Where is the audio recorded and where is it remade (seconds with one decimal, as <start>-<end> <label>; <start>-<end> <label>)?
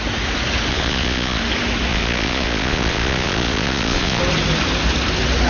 0.0-0.7 recorded; 0.7-1.4 remade; 1.4-1.9 recorded; 1.9-4.2 remade; 4.2-5.5 recorded